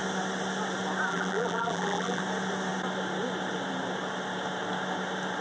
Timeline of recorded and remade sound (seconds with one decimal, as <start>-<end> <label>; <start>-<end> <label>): 0.0-1.1 recorded; 1.1-2.2 remade; 2.2-5.4 recorded

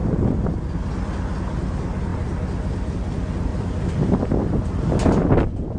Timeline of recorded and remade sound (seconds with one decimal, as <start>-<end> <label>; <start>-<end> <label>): 0.0-0.6 remade; 0.6-2.1 recorded; 2.1-2.9 remade; 2.9-3.5 recorded; 3.5-4.7 remade; 4.7-5.8 recorded

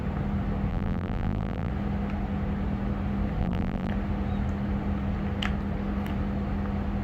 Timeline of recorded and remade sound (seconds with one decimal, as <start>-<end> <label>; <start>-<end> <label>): 0.0-0.7 recorded; 0.7-1.7 remade; 1.7-3.4 recorded; 3.4-3.9 remade; 3.9-7.0 recorded

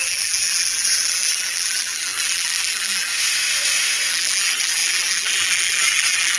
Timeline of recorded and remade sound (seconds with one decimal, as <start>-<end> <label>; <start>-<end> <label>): 0.0-3.1 remade; 3.1-4.1 recorded; 4.1-6.4 remade

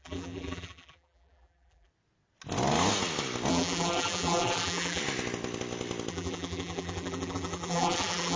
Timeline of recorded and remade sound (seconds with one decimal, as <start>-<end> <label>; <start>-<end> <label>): 0.0-1.9 remade; 1.9-3.5 recorded; 3.5-5.0 remade; 5.0-6.1 recorded; 6.1-8.4 remade

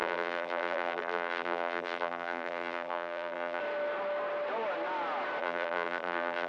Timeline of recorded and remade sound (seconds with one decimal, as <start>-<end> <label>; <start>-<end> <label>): 0.0-3.6 remade; 3.6-5.4 recorded; 5.4-6.5 remade